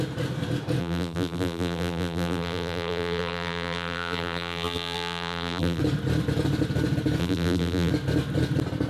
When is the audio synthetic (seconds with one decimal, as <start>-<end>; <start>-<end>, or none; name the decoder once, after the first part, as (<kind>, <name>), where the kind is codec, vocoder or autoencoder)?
0.8-5.8 (vocoder, BigVGAN v2); 7.2-7.9